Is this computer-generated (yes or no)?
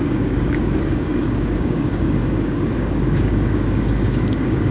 yes